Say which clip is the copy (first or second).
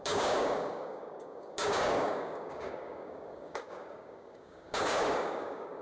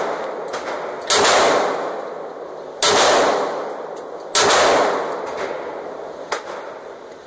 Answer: first